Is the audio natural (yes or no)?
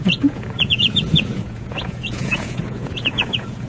no